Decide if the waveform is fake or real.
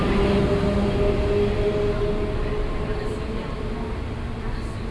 real